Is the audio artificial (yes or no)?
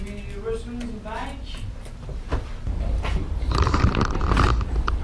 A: no